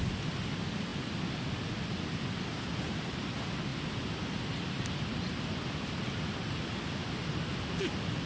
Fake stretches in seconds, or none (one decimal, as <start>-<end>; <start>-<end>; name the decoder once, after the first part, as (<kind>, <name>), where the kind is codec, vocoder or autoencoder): 0.0-0.9 (vocoder, BigVGAN v2); 1.6-8.3